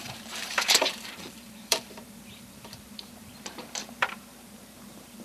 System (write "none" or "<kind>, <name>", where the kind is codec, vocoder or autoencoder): vocoder, BigVGAN v2